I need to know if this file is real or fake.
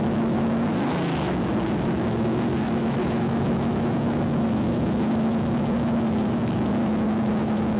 fake